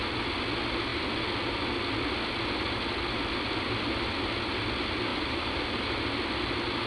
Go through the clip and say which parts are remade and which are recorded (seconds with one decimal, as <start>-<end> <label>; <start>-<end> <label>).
0.0-5.1 recorded; 5.1-5.9 remade; 5.9-6.9 recorded